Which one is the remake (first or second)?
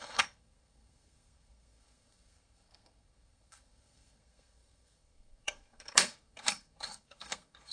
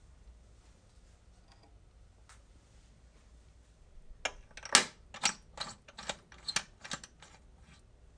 first